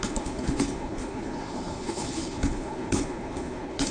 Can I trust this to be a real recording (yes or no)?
no